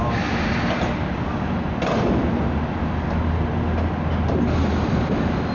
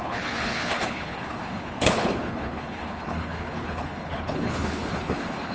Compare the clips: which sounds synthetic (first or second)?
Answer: second